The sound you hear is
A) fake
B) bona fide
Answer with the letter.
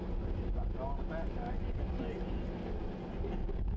B